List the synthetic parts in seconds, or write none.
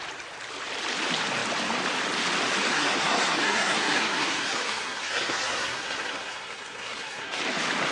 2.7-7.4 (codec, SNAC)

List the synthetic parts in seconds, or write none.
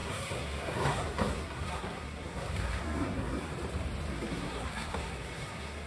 0.0-3.5 (codec, SNAC); 4.1-5.9